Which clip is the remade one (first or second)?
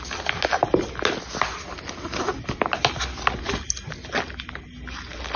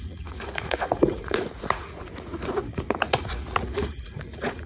second